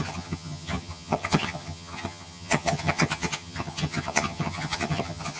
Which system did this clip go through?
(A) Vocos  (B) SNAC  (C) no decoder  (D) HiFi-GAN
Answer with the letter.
D